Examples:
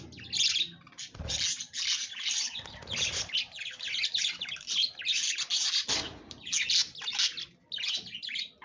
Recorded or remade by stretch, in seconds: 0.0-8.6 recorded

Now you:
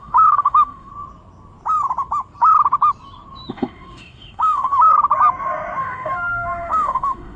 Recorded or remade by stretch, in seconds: 0.0-0.9 remade; 0.9-3.5 recorded; 3.5-4.9 remade; 4.9-5.8 recorded; 5.8-7.4 remade

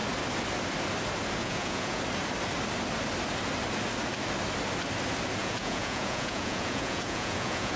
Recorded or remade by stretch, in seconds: 0.0-1.4 recorded; 1.4-2.0 remade; 2.0-5.4 recorded; 5.4-7.8 remade

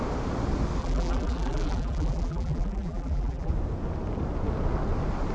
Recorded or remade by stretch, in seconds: 0.0-0.8 recorded; 0.8-3.5 remade; 3.5-5.3 recorded

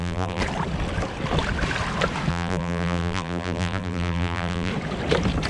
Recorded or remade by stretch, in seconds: 0.0-0.4 remade; 0.4-2.3 recorded; 2.3-4.7 remade; 4.7-5.5 recorded